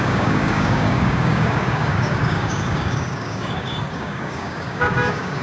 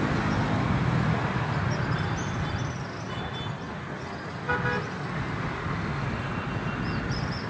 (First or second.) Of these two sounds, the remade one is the first